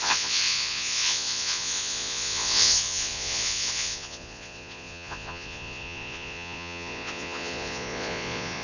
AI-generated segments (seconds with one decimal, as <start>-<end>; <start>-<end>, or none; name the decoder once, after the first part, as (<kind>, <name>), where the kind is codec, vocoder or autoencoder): 0.0-8.6 (vocoder, Vocos)